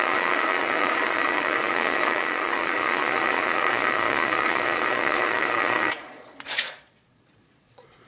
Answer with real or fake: fake